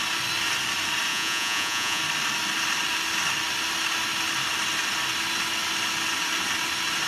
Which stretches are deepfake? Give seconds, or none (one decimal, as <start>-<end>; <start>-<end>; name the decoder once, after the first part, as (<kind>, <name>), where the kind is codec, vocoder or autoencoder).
1.1-2.0 (vocoder, Vocos)